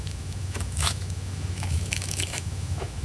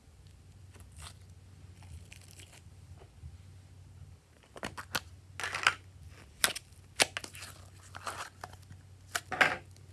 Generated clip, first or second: first